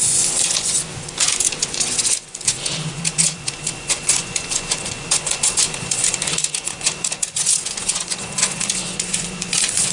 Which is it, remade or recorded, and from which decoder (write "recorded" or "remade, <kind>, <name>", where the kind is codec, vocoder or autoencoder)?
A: remade, vocoder, Vocos